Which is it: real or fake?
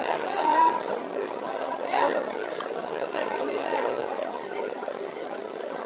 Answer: fake